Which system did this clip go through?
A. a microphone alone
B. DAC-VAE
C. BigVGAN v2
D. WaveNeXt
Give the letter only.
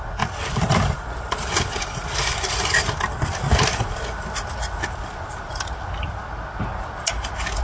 A